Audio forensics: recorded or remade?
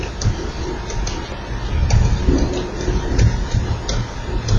recorded